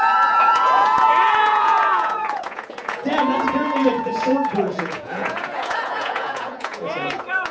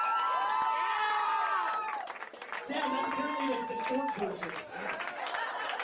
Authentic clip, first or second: second